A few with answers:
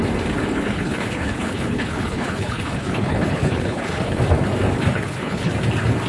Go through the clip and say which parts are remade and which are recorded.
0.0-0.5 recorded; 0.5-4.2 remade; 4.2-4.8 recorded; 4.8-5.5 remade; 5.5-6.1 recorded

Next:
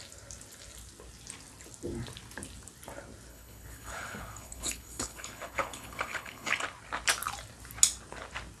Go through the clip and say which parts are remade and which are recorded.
0.0-3.3 recorded; 3.3-6.5 remade; 6.5-8.6 recorded